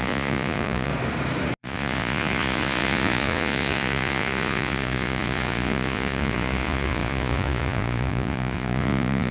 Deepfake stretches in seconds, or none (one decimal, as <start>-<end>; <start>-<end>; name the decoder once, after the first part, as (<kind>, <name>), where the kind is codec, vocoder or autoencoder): 0.0-0.9 (vocoder, Vocos); 1.6-9.3